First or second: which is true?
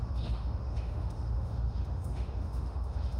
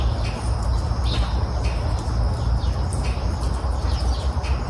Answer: second